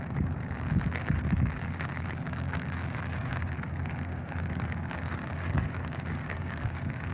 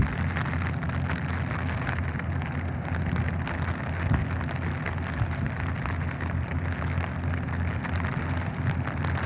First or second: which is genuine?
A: second